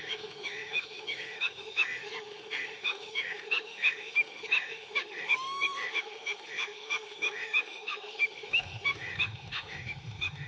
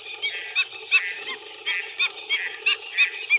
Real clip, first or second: second